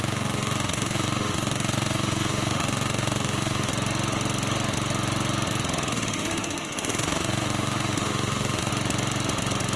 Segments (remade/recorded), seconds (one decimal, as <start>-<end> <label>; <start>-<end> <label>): 0.0-3.7 remade; 3.7-5.9 recorded; 5.9-8.7 remade; 8.7-9.8 recorded